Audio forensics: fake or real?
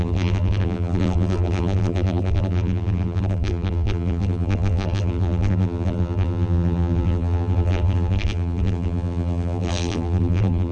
fake